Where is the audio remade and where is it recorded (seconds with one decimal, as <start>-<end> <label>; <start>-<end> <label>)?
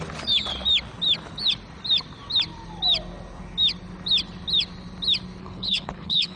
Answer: 0.0-5.4 recorded; 5.4-6.4 remade